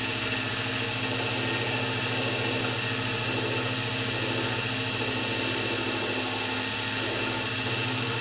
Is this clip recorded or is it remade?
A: recorded